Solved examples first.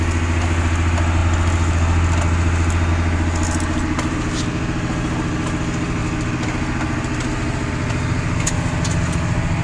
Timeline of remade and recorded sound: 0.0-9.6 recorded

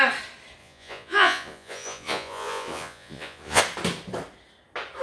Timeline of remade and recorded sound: 0.0-0.6 recorded; 0.6-3.6 remade; 3.6-5.0 recorded

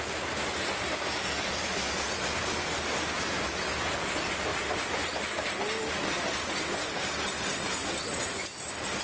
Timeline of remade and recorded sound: 0.0-9.0 recorded

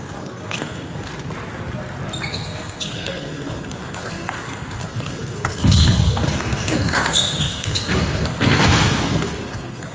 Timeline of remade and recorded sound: 0.0-1.1 remade; 1.1-2.3 recorded; 2.3-9.9 remade

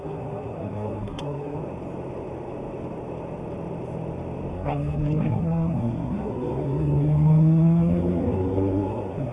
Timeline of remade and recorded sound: 0.0-1.6 remade; 1.6-4.5 recorded; 4.5-9.3 remade

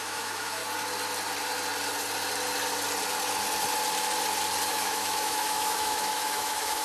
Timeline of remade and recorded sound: 0.0-0.6 remade; 0.6-4.7 recorded; 4.7-6.8 remade

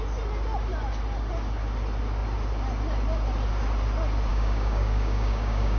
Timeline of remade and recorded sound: 0.0-4.3 recorded; 4.3-5.8 remade